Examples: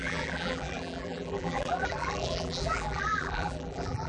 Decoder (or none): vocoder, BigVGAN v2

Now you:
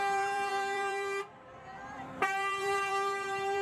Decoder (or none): vocoder, BigVGAN v2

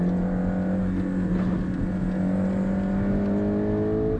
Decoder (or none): none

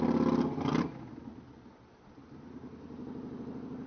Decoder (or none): none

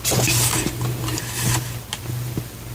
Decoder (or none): vocoder, BigVGAN v2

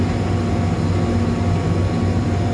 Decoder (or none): none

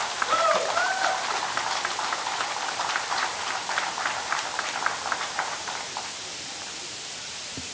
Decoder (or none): vocoder, BigVGAN v2